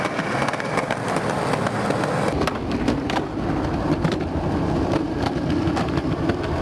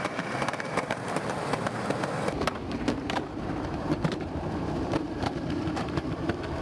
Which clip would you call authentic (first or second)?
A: first